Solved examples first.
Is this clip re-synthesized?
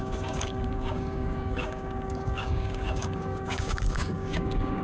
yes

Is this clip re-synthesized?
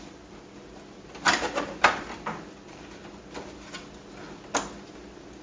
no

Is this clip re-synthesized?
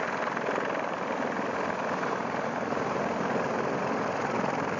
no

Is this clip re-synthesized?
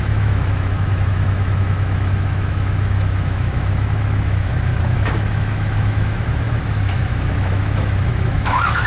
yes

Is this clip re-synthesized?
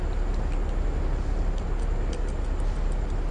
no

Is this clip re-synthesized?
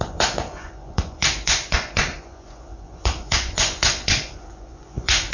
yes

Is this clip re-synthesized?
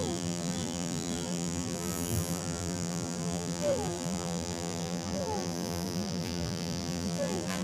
yes